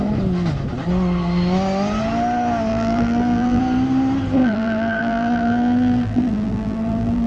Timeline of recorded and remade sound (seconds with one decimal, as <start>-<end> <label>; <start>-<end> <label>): 0.0-2.7 recorded; 2.7-3.6 remade; 3.6-4.4 recorded; 4.4-7.3 remade

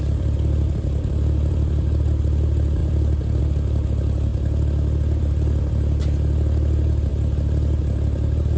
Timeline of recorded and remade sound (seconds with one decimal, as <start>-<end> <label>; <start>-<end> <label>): 0.0-4.3 remade; 4.3-5.2 recorded; 5.2-7.1 remade; 7.1-8.6 recorded